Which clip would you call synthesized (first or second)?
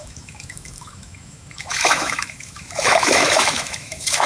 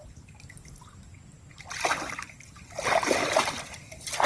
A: first